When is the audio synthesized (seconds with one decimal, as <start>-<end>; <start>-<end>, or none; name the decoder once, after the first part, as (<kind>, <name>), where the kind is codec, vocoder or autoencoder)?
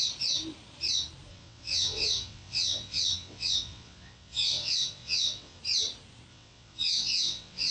1.3-5.6 (vocoder, WaveNeXt); 6.3-7.7